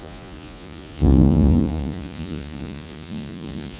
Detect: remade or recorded remade